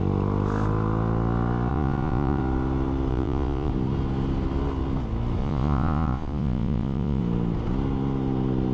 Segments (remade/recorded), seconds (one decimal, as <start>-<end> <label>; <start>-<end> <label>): 0.0-1.7 recorded; 1.7-2.4 remade; 2.4-3.1 recorded; 3.1-3.7 remade; 3.7-5.4 recorded; 5.4-7.2 remade; 7.2-8.7 recorded